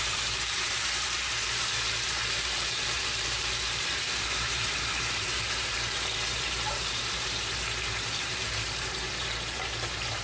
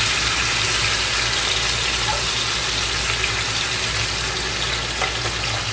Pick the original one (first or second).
second